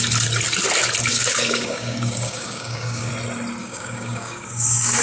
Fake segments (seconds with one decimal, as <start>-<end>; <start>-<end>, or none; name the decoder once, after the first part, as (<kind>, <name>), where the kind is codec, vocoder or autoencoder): 1.1-3.1 (codec, DAC); 3.6-5.0